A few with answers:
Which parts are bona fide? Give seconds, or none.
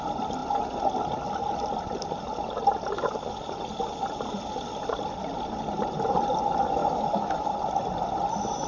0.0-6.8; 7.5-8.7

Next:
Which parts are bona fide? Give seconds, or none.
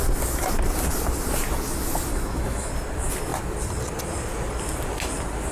0.0-2.1; 2.7-5.5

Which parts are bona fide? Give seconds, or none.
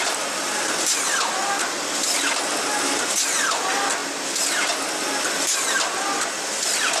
0.0-7.0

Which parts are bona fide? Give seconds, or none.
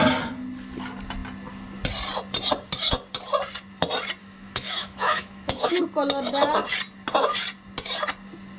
0.0-4.2; 5.8-8.6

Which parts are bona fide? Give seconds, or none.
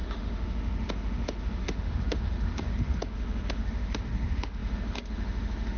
none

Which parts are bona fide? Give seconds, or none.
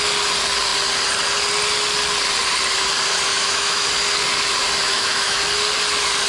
0.0-3.3; 3.9-4.9; 5.4-6.3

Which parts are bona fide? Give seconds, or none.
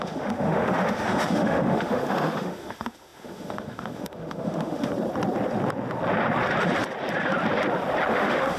4.9-8.1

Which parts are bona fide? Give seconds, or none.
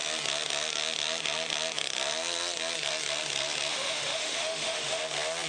0.0-3.7; 5.0-5.5